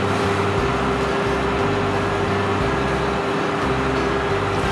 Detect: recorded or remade recorded